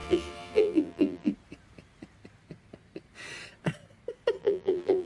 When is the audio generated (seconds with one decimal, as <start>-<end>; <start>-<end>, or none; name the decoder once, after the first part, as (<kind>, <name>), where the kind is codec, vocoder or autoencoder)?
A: 0.0-1.3 (vocoder, BigVGAN v2); 4.4-5.1